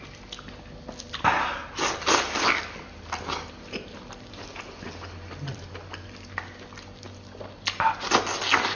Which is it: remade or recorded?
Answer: recorded